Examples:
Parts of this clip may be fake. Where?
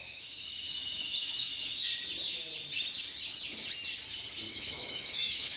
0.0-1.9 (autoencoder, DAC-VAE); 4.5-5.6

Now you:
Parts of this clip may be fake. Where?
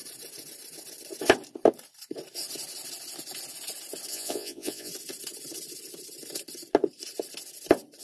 4.1-4.9 (vocoder, Vocos)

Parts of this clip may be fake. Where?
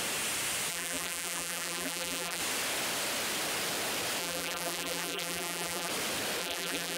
0.7-2.4 (vocoder, BigVGAN v2); 4.2-5.9; 6.4-7.0